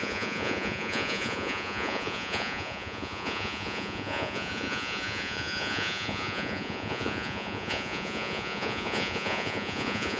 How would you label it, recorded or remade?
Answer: remade